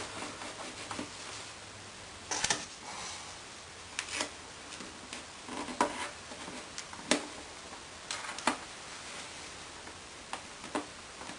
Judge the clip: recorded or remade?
recorded